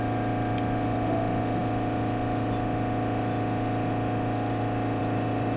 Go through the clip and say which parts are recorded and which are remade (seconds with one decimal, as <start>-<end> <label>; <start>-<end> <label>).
0.0-5.6 recorded